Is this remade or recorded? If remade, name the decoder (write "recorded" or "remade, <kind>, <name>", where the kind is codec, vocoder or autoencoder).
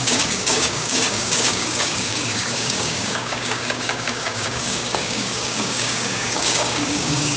remade, codec, DAC